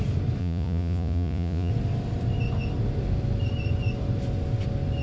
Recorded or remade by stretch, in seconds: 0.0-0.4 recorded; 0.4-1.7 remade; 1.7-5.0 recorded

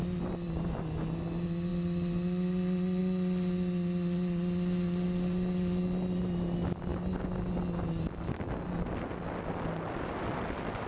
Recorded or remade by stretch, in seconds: 0.0-10.9 recorded